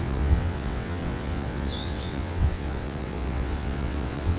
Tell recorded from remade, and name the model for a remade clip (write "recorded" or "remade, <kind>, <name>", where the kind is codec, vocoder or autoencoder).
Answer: remade, vocoder, WaveNeXt